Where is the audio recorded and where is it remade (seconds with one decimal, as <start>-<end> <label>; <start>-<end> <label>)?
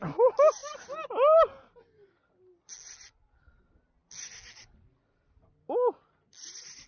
0.0-6.9 recorded